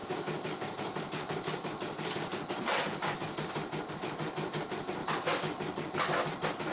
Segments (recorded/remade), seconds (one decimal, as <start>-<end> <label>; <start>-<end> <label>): 0.0-6.7 recorded